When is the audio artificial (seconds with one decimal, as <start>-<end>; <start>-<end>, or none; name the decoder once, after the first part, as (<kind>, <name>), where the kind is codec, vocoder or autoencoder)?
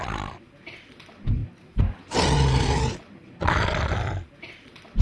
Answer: none